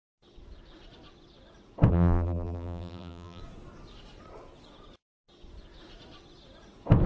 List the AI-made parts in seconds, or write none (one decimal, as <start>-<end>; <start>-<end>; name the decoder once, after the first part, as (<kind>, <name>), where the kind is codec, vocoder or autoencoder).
1.9-3.4 (vocoder, BigVGAN v2)